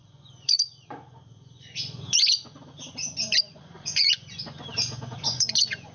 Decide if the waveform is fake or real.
fake